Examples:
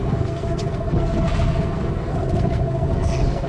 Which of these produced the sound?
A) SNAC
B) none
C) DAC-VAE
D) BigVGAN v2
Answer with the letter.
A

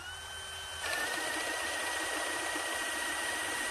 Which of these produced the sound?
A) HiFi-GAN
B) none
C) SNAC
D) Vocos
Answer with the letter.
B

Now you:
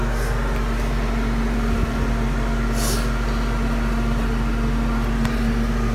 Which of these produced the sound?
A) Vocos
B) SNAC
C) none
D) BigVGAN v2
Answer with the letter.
C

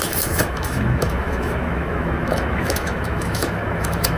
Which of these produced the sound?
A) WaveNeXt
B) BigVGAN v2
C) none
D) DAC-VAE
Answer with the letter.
D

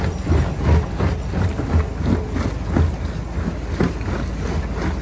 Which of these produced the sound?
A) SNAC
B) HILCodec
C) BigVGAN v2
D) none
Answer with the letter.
D